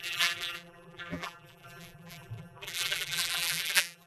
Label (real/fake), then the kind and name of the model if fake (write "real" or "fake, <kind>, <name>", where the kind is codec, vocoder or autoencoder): fake, vocoder, BigVGAN v2